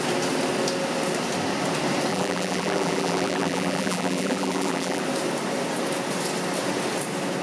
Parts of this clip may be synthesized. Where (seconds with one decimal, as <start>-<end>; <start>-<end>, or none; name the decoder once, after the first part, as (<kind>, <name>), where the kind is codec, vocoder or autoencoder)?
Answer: 2.1-5.0 (vocoder, BigVGAN v2)